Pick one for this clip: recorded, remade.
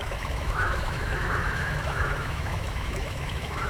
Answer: remade